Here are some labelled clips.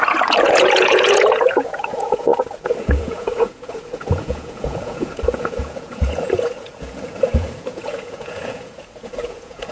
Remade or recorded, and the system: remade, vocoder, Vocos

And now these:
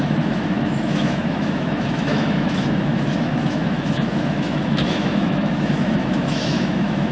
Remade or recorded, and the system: remade, autoencoder, DAC-VAE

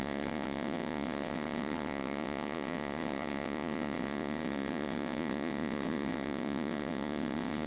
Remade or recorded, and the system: remade, vocoder, WaveNeXt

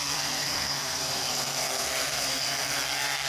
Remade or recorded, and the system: remade, codec, SNAC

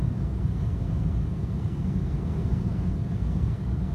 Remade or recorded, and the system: remade, codec, SNAC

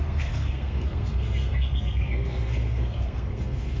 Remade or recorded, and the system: remade, codec, SNAC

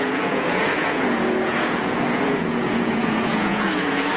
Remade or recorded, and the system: remade, vocoder, Vocos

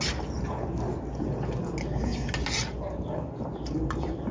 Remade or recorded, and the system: recorded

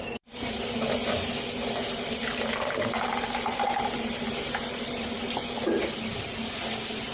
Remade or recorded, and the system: recorded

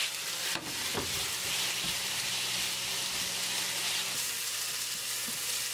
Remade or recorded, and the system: recorded